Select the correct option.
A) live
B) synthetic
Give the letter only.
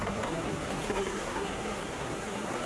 B